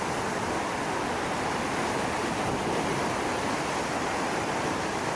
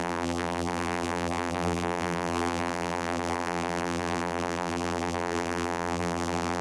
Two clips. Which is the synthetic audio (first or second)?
second